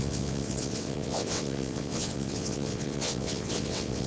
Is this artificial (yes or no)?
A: yes